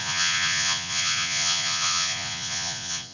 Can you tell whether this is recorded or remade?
remade